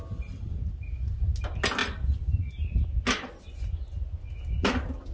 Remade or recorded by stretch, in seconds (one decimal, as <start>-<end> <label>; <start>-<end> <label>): 0.0-5.1 recorded